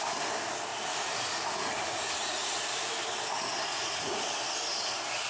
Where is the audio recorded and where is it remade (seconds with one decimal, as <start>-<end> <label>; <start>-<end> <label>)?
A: 0.0-0.7 recorded; 0.7-2.5 remade; 2.5-3.7 recorded; 3.7-4.2 remade; 4.2-5.3 recorded